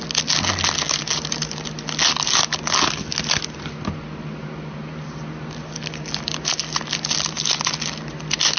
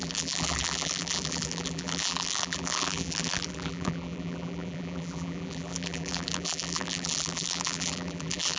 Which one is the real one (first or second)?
first